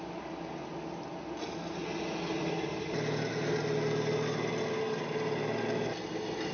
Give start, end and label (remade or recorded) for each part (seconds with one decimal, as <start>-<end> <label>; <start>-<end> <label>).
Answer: 0.0-6.5 recorded